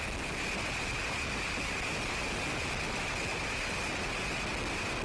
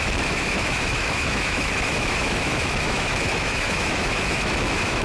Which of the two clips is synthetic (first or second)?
second